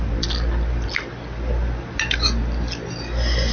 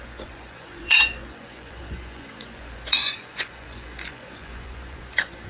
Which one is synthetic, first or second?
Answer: second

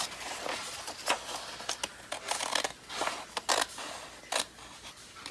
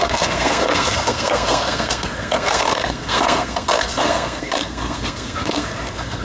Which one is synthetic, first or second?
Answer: second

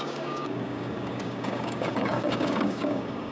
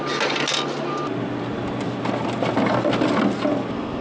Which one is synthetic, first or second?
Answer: first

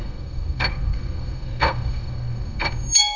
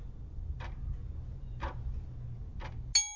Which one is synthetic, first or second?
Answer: first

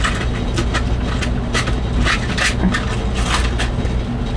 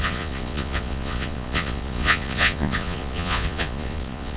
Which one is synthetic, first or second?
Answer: second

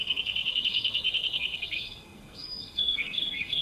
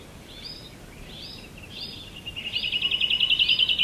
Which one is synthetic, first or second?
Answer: first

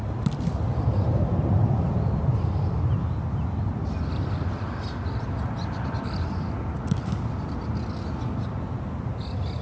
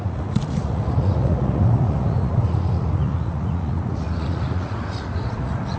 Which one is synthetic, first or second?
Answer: second